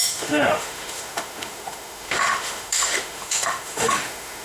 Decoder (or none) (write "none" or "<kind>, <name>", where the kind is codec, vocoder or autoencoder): autoencoder, DAC-VAE